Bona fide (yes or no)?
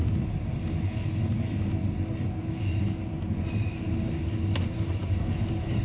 yes